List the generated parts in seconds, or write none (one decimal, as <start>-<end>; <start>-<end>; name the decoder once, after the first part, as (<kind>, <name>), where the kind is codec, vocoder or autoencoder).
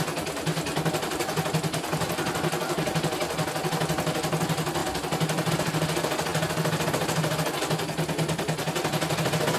none